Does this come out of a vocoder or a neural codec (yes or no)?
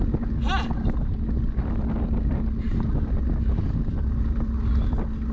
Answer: no